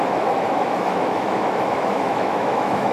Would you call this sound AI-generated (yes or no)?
yes